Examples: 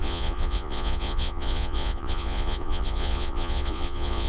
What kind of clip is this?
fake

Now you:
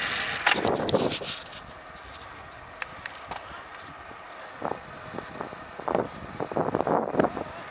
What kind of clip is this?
real